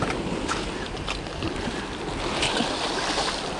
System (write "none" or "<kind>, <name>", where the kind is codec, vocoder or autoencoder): none